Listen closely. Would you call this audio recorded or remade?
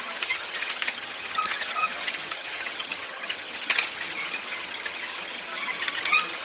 remade